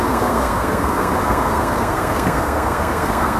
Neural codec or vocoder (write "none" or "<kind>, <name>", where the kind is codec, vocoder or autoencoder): codec, SNAC